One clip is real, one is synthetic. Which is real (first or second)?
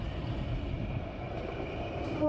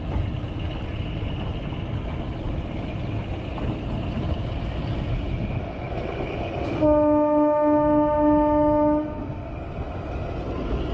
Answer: second